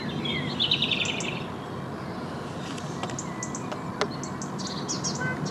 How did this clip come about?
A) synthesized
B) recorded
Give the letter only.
B